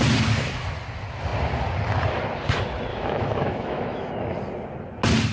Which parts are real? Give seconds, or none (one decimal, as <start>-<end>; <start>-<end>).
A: 0.0-2.9; 4.1-5.3